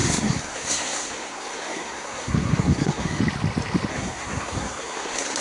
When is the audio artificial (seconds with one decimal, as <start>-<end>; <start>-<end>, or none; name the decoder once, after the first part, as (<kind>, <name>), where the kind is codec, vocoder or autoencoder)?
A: 0.0-3.2 (codec, SNAC); 3.9-5.4